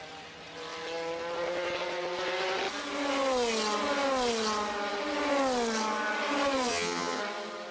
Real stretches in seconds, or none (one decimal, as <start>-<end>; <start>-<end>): 0.0-6.7; 7.2-7.7